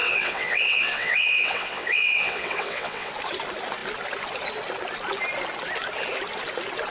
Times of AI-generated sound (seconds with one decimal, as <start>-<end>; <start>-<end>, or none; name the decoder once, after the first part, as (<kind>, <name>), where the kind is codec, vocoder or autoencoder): 0.0-3.1 (vocoder, WaveNeXt)

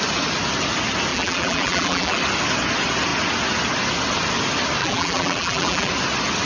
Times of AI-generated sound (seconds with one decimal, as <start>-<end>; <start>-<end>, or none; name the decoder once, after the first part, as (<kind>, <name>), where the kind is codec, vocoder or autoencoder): 1.1-2.2 (vocoder, BigVGAN v2); 4.8-5.9

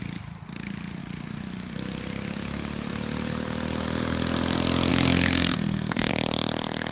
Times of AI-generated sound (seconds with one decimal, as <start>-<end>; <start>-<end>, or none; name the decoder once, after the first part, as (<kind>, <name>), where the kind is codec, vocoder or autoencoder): 4.9-6.1 (codec, SNAC)

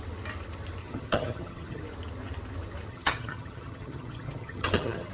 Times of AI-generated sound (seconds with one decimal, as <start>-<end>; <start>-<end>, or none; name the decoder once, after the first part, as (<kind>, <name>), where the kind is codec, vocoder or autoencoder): 0.8-1.8 (vocoder, HiFi-GAN); 2.9-5.1

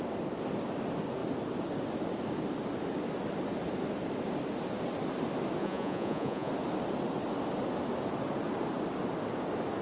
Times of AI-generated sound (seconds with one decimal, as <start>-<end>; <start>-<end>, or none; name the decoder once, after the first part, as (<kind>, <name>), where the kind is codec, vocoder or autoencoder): 5.6-6.5 (vocoder, Vocos)

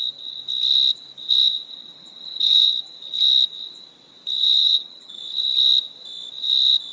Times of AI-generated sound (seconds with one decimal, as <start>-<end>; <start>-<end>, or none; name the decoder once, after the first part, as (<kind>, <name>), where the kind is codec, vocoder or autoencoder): 1.7-2.7 (vocoder, HiFi-GAN); 4.6-5.2

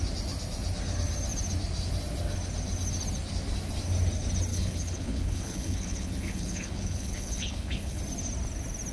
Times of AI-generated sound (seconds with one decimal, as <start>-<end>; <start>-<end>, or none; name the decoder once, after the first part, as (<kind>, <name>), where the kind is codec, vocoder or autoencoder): 4.5-8.0 (codec, HILCodec)